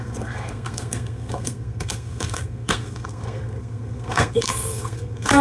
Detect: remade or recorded remade